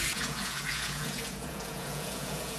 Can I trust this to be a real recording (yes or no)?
no